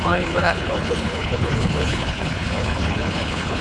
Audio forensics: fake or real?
fake